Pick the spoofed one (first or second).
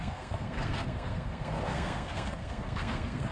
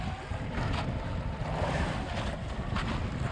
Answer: first